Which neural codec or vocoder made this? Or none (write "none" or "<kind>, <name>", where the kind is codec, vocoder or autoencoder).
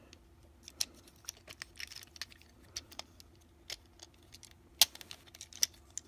none